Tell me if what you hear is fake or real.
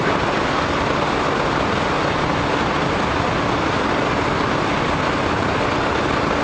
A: real